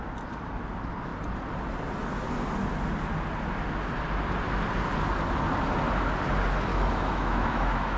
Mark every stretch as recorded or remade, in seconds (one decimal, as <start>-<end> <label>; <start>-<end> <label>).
0.0-6.7 recorded; 6.7-8.0 remade